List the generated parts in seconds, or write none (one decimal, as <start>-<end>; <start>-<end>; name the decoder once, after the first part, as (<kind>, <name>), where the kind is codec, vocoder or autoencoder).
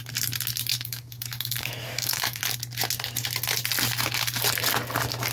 0.7-2.4 (codec, DAC)